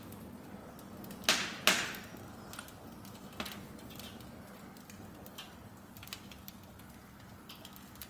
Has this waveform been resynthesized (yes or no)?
no